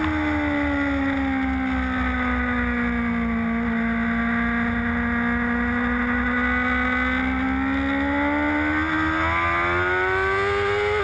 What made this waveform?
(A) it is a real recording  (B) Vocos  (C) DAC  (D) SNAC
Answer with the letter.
A